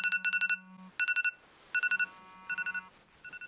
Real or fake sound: real